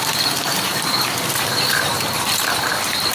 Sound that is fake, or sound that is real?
fake